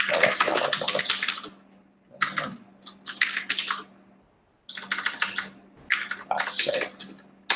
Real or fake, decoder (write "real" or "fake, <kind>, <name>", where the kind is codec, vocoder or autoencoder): real